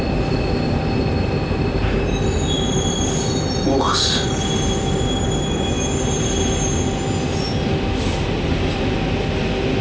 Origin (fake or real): real